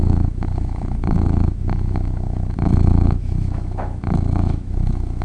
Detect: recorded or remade remade